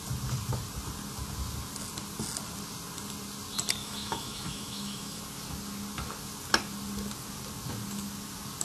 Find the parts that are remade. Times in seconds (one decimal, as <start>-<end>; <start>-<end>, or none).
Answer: 3.8-5.2